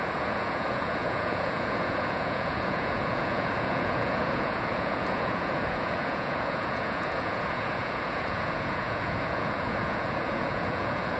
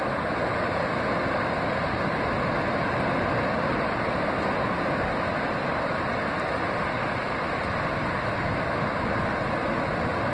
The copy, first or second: first